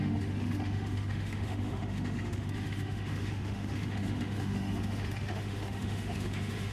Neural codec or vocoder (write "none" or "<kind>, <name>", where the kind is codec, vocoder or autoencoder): autoencoder, DAC-VAE